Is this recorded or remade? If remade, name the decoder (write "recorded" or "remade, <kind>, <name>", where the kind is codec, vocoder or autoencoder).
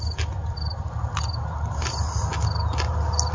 recorded